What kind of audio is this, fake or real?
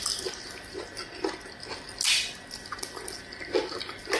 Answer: real